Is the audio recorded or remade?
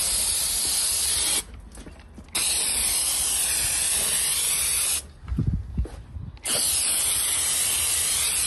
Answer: recorded